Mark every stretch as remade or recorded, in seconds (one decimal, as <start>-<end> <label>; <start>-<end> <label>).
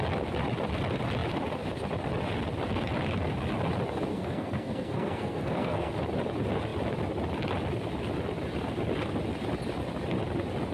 0.0-4.1 recorded; 4.1-5.9 remade; 5.9-10.7 recorded